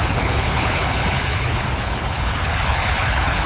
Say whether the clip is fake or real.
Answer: fake